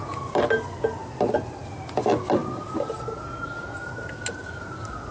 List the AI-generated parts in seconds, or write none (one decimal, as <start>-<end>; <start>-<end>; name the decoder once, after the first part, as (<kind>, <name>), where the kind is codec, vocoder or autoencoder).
none